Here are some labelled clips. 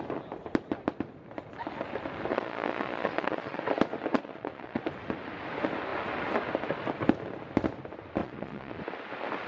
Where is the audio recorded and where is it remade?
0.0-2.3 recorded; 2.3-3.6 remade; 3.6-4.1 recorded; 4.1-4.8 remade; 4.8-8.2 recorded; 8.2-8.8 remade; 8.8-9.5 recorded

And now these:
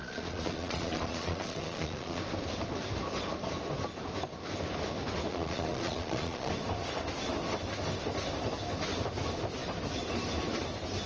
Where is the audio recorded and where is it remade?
0.0-2.2 remade; 2.2-5.3 recorded; 5.3-6.5 remade; 6.5-11.1 recorded

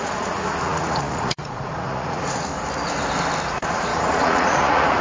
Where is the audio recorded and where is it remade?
0.0-2.5 remade; 2.5-3.4 recorded; 3.4-5.0 remade

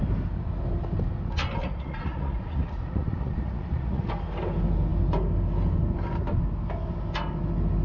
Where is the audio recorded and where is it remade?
0.0-1.6 recorded; 1.6-4.1 remade; 4.1-7.8 recorded

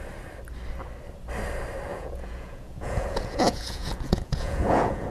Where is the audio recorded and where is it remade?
0.0-1.9 recorded; 1.9-5.1 remade

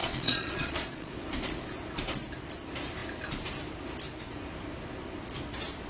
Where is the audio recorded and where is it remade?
0.0-1.1 remade; 1.1-5.9 recorded

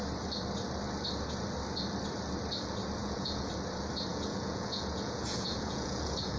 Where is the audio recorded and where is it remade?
0.0-3.0 recorded; 3.0-3.5 remade; 3.5-4.1 recorded; 4.1-6.4 remade